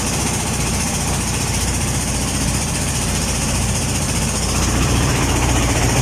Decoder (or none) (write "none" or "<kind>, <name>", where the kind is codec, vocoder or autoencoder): vocoder, BigVGAN v2